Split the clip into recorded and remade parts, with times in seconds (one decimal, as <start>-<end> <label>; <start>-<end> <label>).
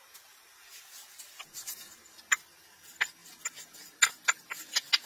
0.0-5.1 recorded